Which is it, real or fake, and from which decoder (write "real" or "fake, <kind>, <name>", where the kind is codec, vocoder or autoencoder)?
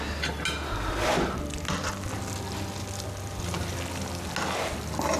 real